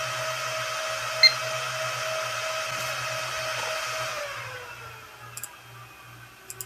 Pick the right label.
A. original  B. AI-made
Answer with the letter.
A